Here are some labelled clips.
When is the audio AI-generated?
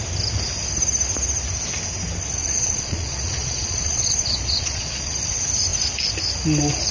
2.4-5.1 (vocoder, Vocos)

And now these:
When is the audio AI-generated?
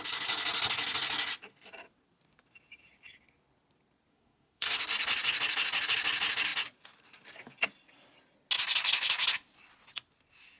4.1-4.8 (codec, SNAC)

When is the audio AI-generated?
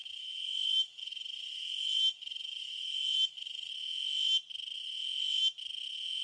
0.0-3.7 (autoencoder, DAC-VAE)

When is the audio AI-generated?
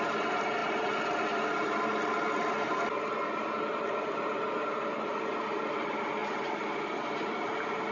none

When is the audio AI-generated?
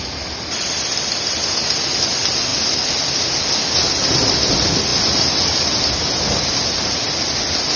none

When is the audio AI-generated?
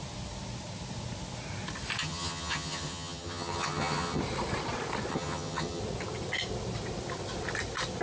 2.0-4.2 (vocoder, HiFi-GAN); 5.1-5.8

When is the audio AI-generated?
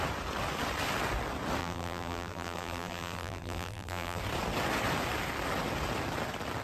1.6-4.2 (vocoder, BigVGAN v2)